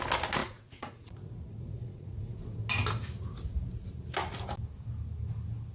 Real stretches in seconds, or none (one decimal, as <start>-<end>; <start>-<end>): 0.0-0.4; 2.2-5.7